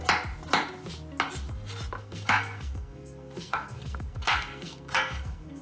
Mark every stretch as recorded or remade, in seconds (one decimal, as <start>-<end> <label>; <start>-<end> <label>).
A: 0.0-2.0 recorded; 2.0-5.6 remade